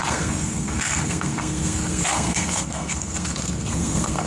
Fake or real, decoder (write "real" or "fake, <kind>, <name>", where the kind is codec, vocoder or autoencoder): fake, codec, SNAC